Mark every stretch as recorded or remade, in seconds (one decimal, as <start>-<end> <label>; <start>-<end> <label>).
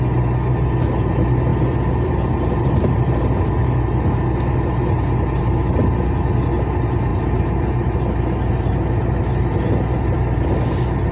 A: 0.0-11.1 recorded